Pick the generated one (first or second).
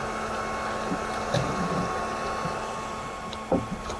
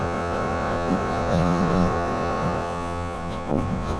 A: second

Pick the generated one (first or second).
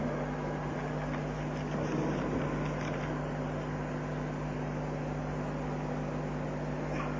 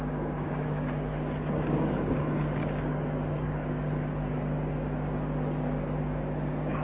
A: second